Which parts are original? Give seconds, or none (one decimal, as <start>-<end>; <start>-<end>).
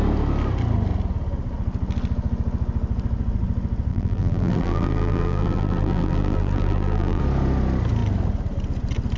0.0-3.9; 7.2-9.2